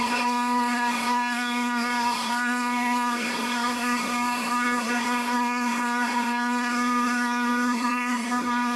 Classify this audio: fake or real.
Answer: fake